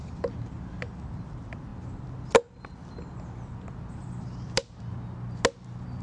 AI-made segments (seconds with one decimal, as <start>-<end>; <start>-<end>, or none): none